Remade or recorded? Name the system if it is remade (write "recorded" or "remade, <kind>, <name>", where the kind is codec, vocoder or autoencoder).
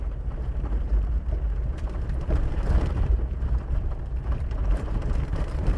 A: remade, vocoder, BigVGAN v2